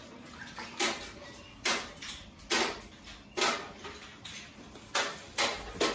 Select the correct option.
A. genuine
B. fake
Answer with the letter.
A